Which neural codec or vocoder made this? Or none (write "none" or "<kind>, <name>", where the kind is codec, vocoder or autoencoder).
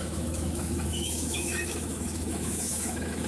autoencoder, DAC-VAE